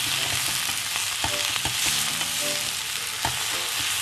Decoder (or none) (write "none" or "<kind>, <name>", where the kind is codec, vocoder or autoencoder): none